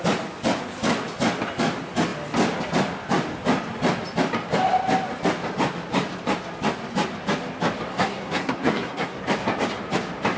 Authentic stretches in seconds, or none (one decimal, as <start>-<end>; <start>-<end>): 0.0-7.9; 9.2-10.4